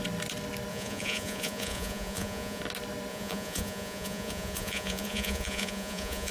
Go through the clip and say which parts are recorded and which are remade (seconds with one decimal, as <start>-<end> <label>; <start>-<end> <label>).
0.0-0.7 recorded; 0.7-2.6 remade; 2.6-3.1 recorded; 3.1-6.3 remade